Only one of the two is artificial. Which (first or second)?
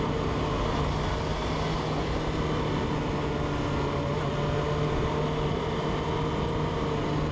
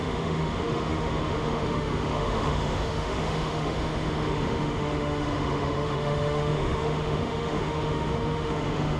second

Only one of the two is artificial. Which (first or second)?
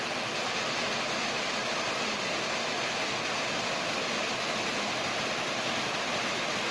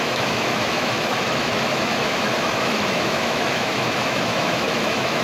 second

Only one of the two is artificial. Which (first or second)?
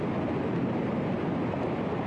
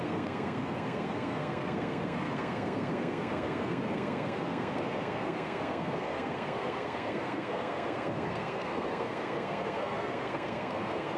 second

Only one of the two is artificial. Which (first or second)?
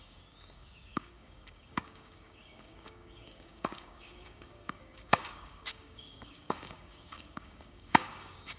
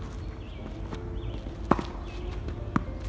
first